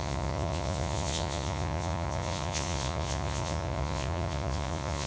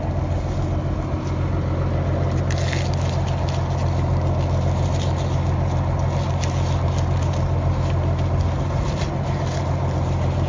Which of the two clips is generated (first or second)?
first